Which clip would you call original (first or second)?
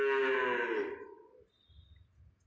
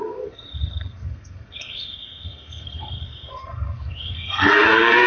first